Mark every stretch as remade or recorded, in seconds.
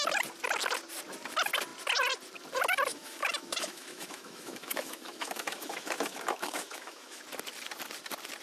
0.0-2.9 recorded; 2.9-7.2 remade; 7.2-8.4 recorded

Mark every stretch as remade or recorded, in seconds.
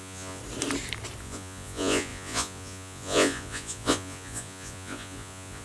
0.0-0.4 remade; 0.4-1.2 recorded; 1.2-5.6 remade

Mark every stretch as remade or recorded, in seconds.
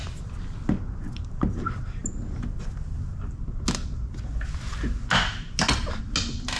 0.0-6.6 recorded